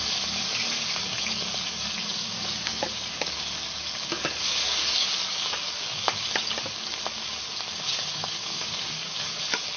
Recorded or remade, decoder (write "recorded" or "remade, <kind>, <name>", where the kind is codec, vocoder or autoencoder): remade, codec, DAC